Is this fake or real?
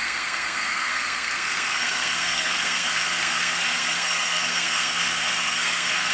fake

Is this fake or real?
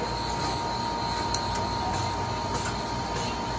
real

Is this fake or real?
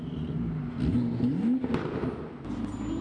real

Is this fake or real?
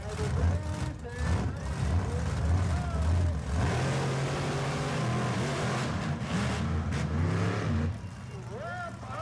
real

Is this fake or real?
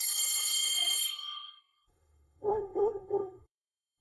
fake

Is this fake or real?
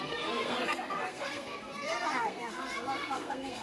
fake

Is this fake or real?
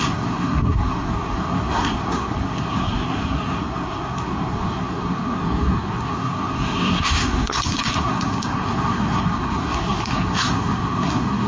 fake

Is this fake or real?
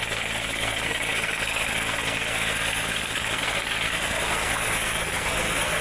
fake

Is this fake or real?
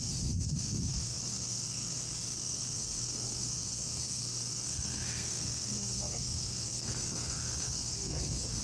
fake